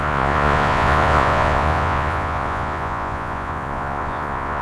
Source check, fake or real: fake